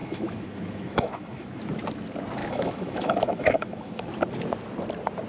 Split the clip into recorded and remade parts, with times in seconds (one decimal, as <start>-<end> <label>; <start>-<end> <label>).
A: 0.0-1.6 remade; 1.6-2.4 recorded; 2.4-3.9 remade; 3.9-5.3 recorded